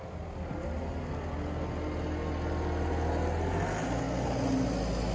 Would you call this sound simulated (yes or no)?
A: no